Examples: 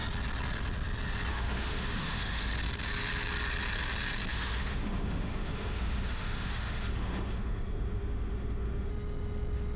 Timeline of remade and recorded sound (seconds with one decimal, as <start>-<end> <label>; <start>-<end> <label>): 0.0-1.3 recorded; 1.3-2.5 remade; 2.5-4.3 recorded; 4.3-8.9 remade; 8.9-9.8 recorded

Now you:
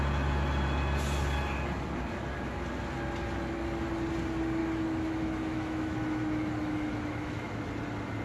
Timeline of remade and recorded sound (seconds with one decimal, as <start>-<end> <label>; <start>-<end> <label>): 0.0-4.6 recorded; 4.6-7.5 remade; 7.5-8.2 recorded

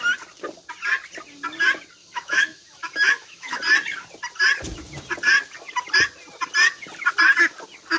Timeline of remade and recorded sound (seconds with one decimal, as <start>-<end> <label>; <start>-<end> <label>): 0.0-2.0 recorded; 2.0-3.6 remade; 3.6-8.0 recorded

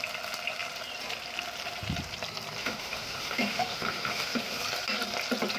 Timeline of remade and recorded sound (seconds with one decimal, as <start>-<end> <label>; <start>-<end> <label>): 0.0-2.6 recorded; 2.6-4.6 remade; 4.6-5.6 recorded

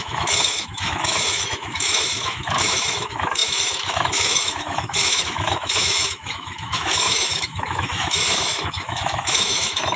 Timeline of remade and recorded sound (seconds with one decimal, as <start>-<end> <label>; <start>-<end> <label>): 0.0-10.0 remade

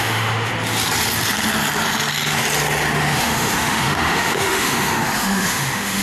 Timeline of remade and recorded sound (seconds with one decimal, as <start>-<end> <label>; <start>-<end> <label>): 0.0-0.5 remade; 0.5-3.0 recorded; 3.0-6.0 remade